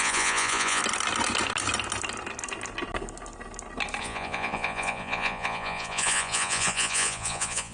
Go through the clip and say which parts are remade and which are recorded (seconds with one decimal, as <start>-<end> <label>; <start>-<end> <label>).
0.0-0.8 remade; 0.8-4.0 recorded; 4.0-7.7 remade